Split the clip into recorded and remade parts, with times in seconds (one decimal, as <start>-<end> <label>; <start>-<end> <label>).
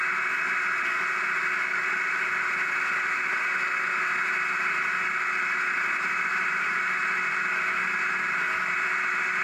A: 0.0-6.3 recorded; 6.3-6.8 remade; 6.8-9.4 recorded